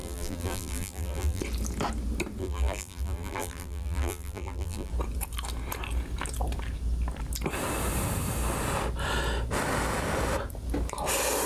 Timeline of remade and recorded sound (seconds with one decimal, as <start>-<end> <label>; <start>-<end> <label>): 0.0-1.4 remade; 1.4-2.4 recorded; 2.4-4.9 remade; 4.9-11.5 recorded